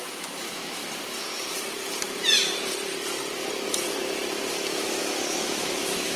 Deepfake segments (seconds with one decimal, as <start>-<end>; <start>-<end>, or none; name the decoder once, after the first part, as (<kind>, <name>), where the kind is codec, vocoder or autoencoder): 0.0-0.8 (autoencoder, DAC-VAE); 4.5-6.2